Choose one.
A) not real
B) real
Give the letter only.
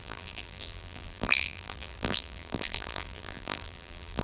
A